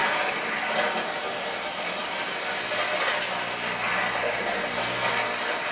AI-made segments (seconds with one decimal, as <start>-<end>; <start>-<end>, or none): none